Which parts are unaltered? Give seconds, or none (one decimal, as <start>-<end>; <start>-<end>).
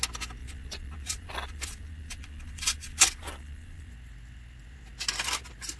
0.0-0.4; 3.9-5.8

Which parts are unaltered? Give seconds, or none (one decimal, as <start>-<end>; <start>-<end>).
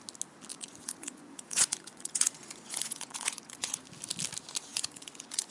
0.0-0.5; 3.8-4.7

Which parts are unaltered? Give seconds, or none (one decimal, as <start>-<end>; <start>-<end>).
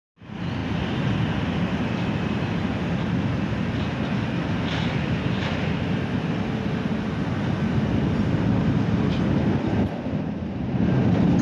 0.0-11.4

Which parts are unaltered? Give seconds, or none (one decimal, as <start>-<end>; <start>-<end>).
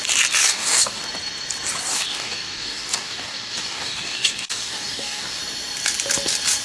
0.0-0.4; 1.0-1.9; 5.4-6.6